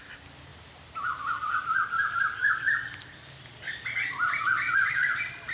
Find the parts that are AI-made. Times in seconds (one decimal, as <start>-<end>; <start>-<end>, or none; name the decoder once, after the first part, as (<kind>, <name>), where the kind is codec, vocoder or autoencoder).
none